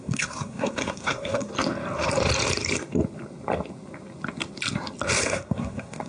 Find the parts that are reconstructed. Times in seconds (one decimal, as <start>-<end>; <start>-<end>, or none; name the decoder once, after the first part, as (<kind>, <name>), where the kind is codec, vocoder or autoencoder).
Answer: 0.0-1.5 (codec, SNAC); 5.2-6.1